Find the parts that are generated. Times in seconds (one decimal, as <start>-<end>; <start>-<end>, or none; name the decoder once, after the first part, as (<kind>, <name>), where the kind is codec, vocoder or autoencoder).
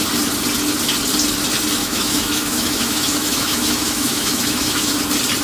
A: 1.8-5.0 (autoencoder, DAC-VAE)